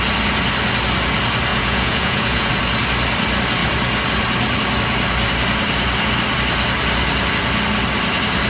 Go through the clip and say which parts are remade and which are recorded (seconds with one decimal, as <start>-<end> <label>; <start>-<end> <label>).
0.0-1.5 recorded; 1.5-2.5 remade; 2.5-8.5 recorded